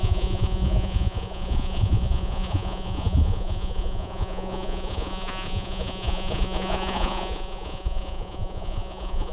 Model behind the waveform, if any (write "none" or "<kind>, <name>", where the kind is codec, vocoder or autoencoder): vocoder, Vocos